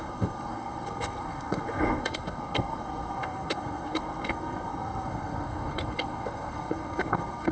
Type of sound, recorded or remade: remade